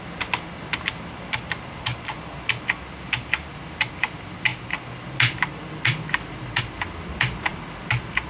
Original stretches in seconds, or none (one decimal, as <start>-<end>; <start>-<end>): 0.0-8.3